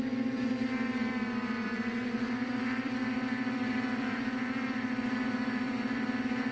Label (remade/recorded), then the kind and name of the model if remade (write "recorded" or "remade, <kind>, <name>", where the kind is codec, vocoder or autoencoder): remade, vocoder, BigVGAN v2